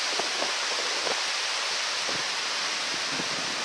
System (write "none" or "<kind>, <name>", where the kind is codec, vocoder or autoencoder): none